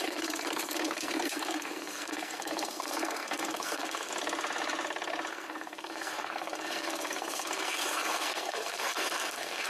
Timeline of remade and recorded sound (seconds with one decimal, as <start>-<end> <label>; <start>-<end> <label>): 0.0-4.1 remade; 4.1-5.3 recorded; 5.3-9.7 remade